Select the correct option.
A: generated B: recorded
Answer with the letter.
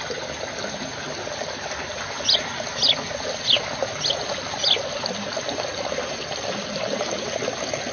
B